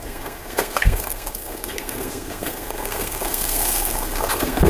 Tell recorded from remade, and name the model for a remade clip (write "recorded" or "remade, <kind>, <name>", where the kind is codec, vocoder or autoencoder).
remade, codec, SNAC